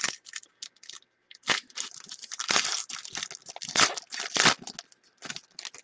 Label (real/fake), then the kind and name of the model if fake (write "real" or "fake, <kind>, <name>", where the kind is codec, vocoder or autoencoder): real